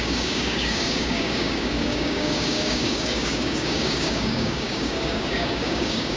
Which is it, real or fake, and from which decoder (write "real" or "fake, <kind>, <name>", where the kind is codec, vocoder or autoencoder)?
fake, codec, DAC